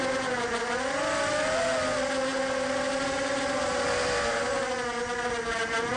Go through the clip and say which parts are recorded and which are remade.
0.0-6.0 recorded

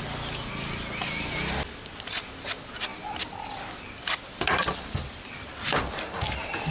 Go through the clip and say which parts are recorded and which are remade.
0.0-6.7 recorded